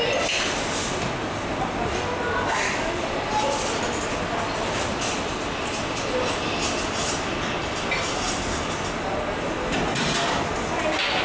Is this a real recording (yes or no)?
yes